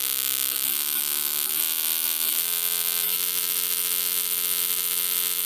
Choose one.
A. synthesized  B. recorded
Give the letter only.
A